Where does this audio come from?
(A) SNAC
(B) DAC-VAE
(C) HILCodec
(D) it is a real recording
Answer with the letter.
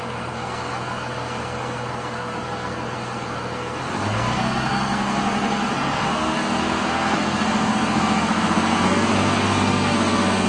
A